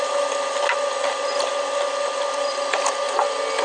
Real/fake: real